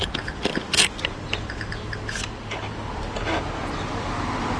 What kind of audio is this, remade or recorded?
recorded